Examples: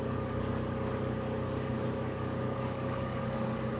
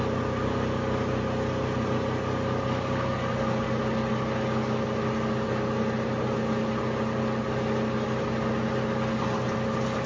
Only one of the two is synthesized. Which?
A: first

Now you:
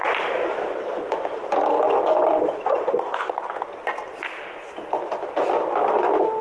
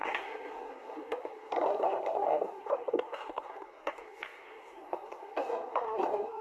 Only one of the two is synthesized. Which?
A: second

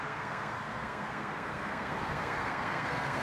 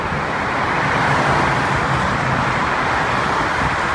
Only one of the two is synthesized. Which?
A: first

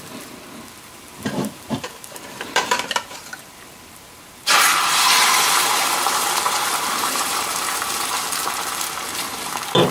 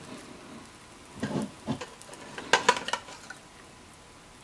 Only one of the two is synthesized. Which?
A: first